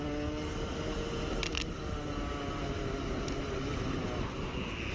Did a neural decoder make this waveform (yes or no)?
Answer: no